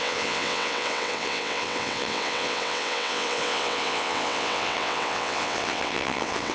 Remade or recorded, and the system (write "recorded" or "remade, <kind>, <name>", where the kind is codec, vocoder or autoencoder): remade, vocoder, WaveNeXt